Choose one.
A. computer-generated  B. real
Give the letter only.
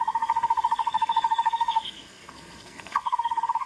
A